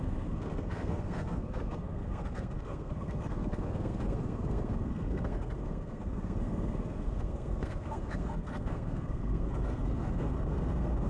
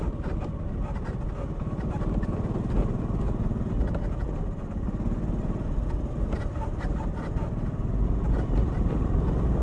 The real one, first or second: second